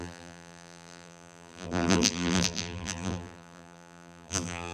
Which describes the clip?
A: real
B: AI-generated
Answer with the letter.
B